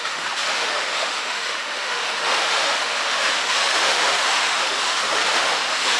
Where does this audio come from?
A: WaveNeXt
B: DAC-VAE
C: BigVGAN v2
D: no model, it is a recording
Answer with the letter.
B